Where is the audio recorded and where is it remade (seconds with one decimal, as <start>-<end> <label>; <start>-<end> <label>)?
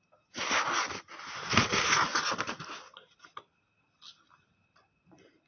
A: 0.0-5.5 recorded